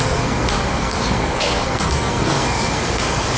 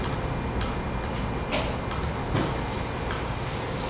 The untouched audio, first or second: second